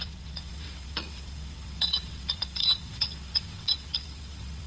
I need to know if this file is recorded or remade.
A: remade